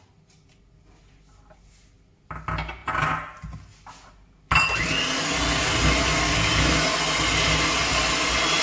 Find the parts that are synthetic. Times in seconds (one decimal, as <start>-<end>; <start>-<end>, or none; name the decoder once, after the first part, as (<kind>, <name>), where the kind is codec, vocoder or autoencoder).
none